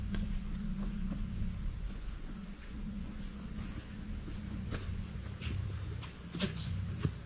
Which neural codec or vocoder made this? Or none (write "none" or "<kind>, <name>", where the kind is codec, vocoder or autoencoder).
vocoder, Vocos